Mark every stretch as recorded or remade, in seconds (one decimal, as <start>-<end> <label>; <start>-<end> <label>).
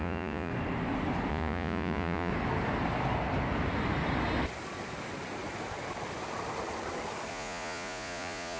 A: 0.0-0.5 remade; 0.5-1.3 recorded; 1.3-2.3 remade; 2.3-7.3 recorded; 7.3-8.6 remade